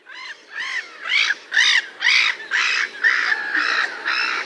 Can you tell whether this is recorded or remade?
recorded